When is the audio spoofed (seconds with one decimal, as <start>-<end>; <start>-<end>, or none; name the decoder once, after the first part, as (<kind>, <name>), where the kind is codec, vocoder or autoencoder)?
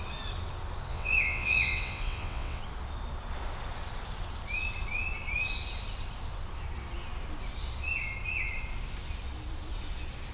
0.9-2.6 (vocoder, WaveNeXt)